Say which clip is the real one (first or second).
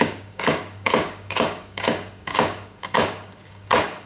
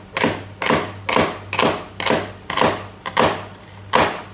second